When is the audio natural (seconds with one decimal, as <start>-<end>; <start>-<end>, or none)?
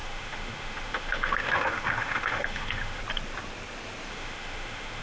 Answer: 3.0-4.1